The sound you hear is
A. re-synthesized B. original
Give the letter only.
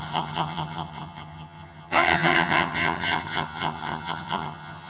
A